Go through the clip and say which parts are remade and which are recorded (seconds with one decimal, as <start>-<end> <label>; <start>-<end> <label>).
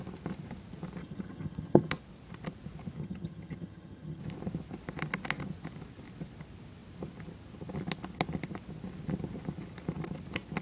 0.0-1.0 recorded; 1.0-1.9 remade; 1.9-3.0 recorded; 3.0-4.2 remade; 4.2-10.6 recorded